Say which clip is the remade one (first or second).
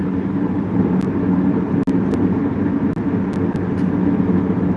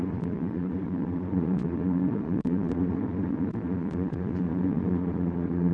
second